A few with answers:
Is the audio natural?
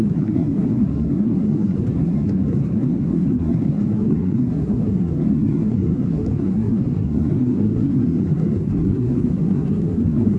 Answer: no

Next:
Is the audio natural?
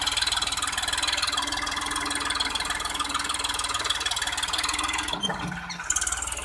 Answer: yes